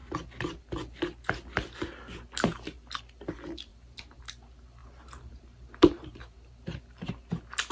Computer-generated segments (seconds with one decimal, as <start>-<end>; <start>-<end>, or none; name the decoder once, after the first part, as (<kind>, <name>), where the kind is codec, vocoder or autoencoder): 3.7-4.3 (vocoder, BigVGAN v2); 4.8-7.1